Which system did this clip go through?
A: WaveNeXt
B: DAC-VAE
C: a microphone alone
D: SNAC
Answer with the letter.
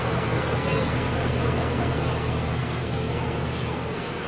D